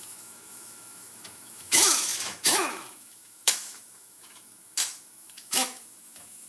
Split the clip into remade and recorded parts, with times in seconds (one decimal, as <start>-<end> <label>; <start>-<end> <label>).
0.0-6.5 remade